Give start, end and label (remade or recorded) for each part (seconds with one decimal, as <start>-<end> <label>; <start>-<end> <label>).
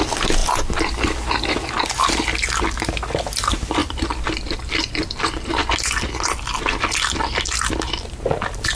0.0-3.8 recorded; 3.8-4.9 remade; 4.9-8.8 recorded